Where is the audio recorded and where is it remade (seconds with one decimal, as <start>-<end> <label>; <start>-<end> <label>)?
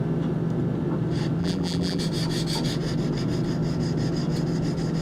0.0-1.4 recorded; 1.4-2.0 remade; 2.0-5.0 recorded